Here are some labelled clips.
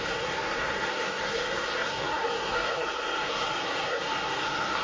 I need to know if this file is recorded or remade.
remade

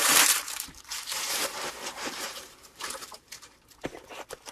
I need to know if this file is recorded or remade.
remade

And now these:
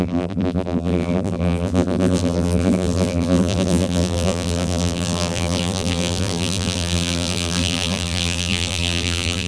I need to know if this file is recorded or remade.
remade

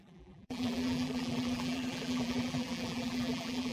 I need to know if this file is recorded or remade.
remade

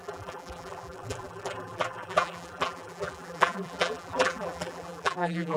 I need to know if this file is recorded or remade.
remade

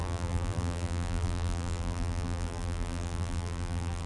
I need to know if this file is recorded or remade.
remade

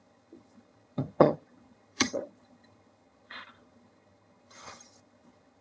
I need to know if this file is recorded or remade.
remade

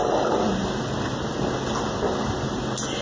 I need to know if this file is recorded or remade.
recorded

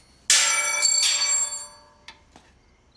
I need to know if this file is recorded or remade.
recorded